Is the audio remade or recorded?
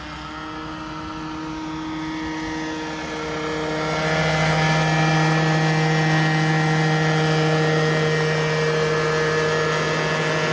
recorded